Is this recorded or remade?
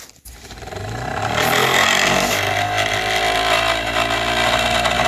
recorded